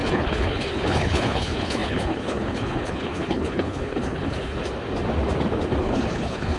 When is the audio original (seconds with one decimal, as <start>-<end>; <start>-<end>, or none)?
4.6-5.8